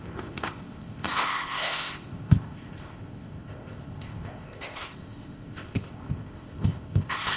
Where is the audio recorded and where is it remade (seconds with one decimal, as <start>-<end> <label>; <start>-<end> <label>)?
0.0-7.4 remade